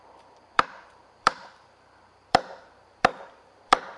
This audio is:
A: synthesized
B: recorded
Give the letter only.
A